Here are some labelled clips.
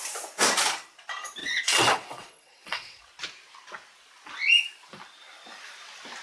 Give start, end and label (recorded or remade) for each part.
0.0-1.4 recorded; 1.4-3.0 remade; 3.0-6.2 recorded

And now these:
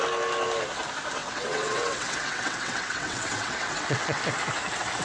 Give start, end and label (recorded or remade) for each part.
0.0-1.2 recorded; 1.2-4.2 remade; 4.2-5.0 recorded

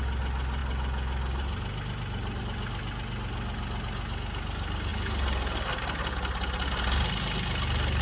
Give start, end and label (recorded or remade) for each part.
0.0-8.0 recorded